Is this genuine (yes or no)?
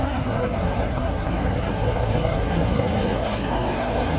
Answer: no